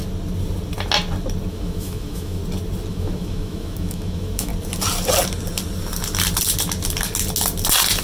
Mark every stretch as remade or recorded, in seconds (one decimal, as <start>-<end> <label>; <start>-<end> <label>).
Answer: 0.0-1.5 recorded; 1.5-2.4 remade; 2.4-2.9 recorded; 2.9-4.5 remade; 4.5-8.0 recorded